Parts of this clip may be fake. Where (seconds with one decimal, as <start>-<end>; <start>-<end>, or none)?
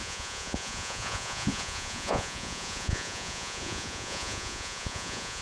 0.0-5.4